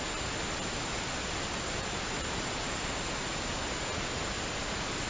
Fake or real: real